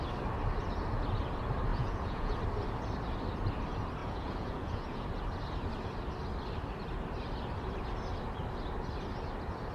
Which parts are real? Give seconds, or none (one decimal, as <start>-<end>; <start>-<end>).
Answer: 0.0-1.7; 2.4-4.0; 5.0-9.7